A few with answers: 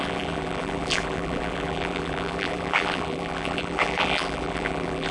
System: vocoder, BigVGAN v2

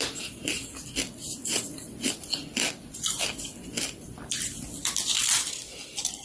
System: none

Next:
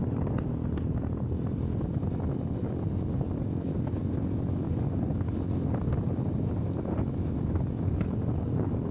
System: none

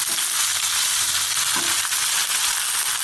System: none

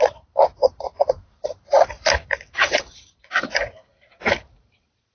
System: vocoder, BigVGAN v2